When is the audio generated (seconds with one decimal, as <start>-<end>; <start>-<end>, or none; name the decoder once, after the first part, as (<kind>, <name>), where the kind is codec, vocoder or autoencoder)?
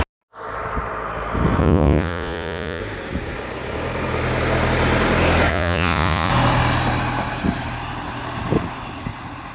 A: 1.6-2.8 (vocoder, Vocos); 5.5-6.3